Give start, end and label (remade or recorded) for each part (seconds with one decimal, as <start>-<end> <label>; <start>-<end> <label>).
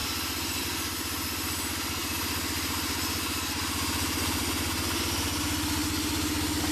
0.0-6.7 recorded